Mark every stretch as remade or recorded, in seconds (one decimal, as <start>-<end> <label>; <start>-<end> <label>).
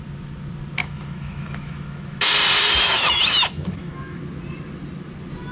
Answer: 0.0-0.8 recorded; 0.8-2.3 remade; 2.3-2.9 recorded; 2.9-4.2 remade; 4.2-5.5 recorded